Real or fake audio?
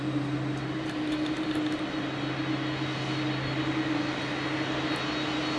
real